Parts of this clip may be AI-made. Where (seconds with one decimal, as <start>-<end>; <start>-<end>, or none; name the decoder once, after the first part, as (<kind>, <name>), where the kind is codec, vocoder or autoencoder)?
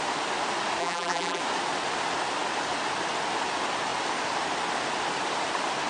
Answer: 0.8-1.4 (vocoder, BigVGAN v2)